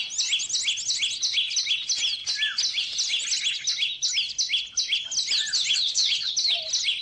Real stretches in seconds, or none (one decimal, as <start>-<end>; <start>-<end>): 0.0-5.7; 6.3-7.0